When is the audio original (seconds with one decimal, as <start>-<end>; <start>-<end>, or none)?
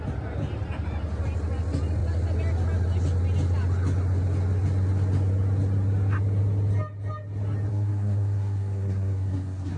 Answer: 0.0-7.7